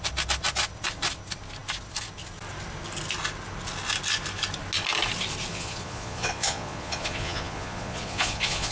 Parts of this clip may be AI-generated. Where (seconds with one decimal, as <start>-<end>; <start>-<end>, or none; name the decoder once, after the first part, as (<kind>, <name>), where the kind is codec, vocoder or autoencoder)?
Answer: 5.5-8.7 (vocoder, Vocos)